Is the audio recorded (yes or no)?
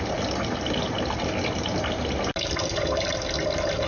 yes